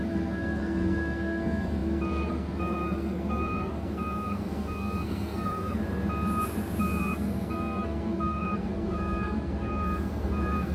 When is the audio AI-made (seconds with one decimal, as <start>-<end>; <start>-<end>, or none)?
0.0-5.8; 6.8-10.7